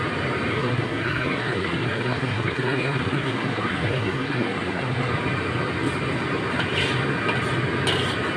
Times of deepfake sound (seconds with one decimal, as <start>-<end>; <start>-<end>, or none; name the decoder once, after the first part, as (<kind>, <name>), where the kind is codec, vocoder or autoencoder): 0.5-5.1 (codec, SNAC)